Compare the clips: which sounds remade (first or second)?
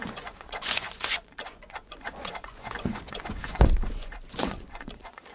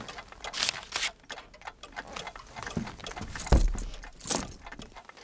first